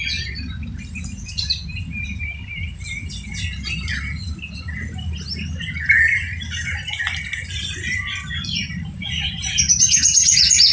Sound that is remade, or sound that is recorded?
recorded